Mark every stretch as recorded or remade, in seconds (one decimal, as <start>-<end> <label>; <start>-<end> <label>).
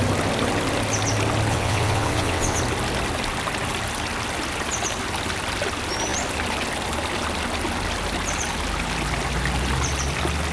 0.0-1.5 recorded; 1.5-2.6 remade; 2.6-10.5 recorded